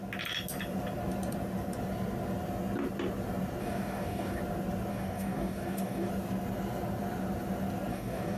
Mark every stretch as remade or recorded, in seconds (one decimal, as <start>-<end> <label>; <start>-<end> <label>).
0.0-3.6 recorded; 3.6-4.4 remade; 4.4-4.9 recorded; 4.9-6.1 remade; 6.1-7.9 recorded; 7.9-8.4 remade